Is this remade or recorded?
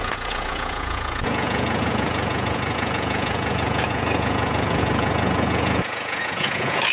remade